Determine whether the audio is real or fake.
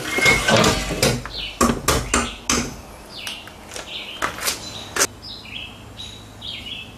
real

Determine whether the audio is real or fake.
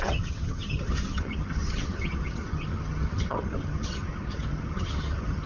fake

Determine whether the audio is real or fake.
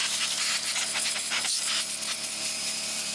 real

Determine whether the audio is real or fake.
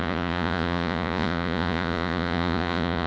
fake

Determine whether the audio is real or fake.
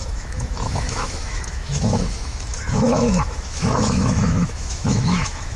fake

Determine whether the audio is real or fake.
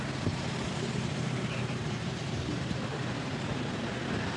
fake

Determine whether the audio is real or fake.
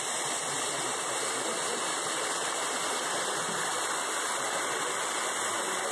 real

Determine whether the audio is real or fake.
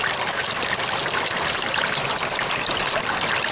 real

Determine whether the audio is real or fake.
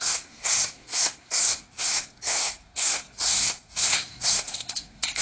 fake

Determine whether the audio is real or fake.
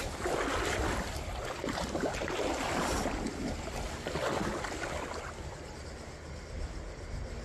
real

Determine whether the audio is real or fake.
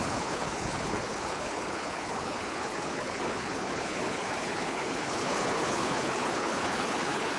fake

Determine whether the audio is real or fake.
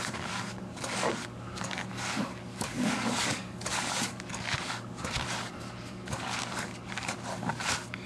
fake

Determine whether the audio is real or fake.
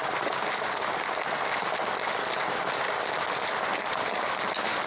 real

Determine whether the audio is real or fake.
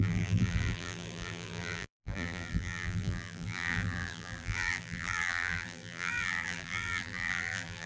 fake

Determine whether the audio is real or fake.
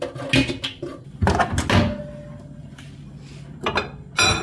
real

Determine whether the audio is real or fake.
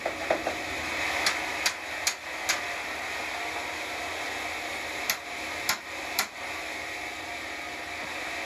real